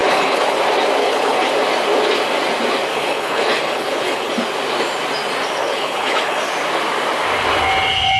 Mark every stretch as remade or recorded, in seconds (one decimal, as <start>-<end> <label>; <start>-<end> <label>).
0.0-0.6 remade; 0.6-1.0 recorded; 1.0-1.5 remade; 1.5-2.9 recorded; 2.9-4.3 remade; 4.3-5.6 recorded; 5.6-6.5 remade; 6.5-8.2 recorded